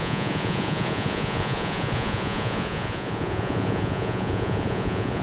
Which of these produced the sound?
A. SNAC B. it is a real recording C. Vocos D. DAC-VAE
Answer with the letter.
C